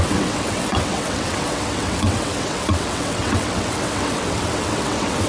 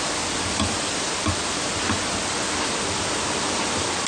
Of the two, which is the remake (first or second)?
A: first